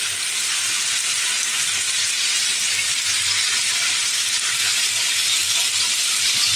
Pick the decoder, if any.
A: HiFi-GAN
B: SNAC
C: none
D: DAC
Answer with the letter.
C